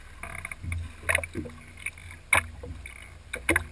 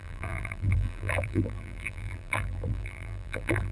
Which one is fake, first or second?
second